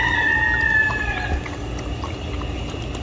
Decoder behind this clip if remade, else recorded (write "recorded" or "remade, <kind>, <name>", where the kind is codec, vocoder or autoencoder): recorded